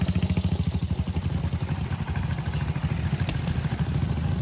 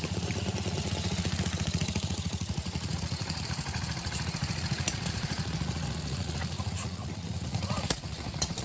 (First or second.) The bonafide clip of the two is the first